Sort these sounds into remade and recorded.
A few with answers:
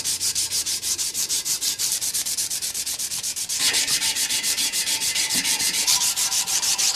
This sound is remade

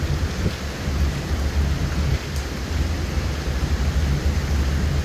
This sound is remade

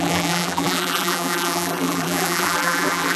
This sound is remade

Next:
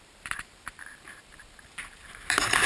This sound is remade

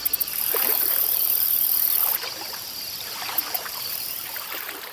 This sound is remade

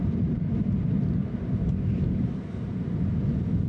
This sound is recorded